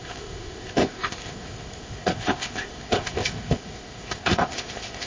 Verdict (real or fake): fake